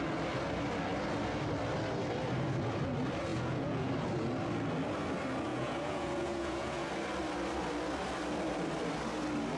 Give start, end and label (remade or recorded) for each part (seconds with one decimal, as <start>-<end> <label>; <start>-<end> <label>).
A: 0.0-3.3 recorded; 3.3-3.9 remade; 3.9-5.5 recorded; 5.5-6.9 remade; 6.9-9.6 recorded